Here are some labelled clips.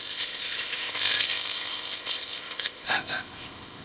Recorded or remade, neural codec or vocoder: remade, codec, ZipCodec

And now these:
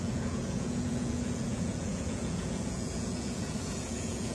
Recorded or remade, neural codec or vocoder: remade, vocoder, Vocos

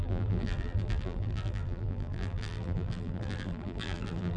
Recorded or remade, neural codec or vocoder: remade, vocoder, BigVGAN v2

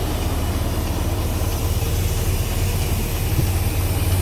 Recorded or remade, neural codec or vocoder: recorded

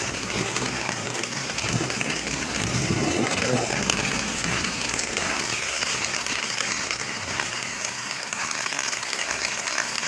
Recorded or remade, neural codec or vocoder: remade, codec, SNAC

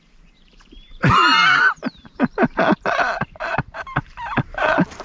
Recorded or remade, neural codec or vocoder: remade, vocoder, BigVGAN v2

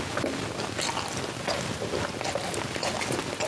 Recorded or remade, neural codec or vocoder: recorded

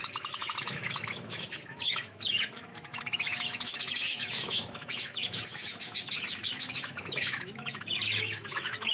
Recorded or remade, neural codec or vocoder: remade, autoencoder, DAC-VAE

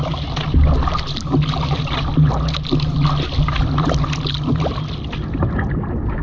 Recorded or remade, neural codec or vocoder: recorded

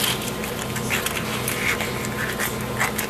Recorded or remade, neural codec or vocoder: recorded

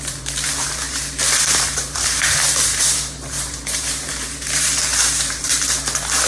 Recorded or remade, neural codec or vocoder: remade, vocoder, BigVGAN v2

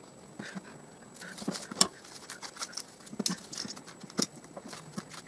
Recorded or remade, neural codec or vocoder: recorded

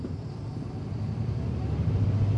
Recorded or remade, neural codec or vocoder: recorded